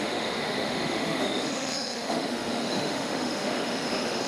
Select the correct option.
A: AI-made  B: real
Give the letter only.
A